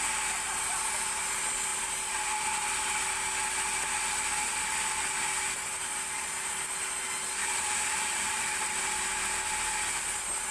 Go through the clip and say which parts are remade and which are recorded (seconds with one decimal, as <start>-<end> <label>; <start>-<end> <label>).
0.0-7.4 recorded; 7.4-9.0 remade; 9.0-10.5 recorded